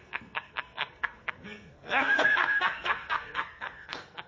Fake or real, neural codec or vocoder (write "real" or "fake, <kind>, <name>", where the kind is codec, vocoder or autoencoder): fake, codec, SNAC